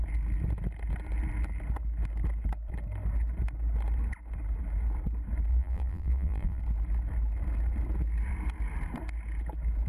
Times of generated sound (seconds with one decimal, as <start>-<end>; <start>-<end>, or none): 5.5-6.6